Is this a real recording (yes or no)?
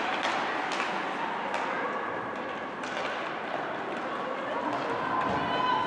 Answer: yes